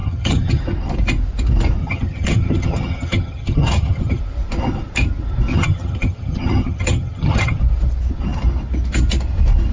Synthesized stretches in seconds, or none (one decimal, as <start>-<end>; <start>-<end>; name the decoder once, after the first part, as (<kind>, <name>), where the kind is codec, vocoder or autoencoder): 0.0-0.6 (vocoder, HiFi-GAN); 1.8-4.2; 5.5-7.6